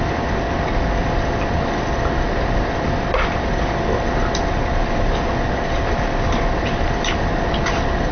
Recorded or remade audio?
remade